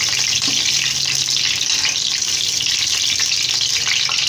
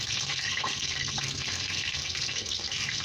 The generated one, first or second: second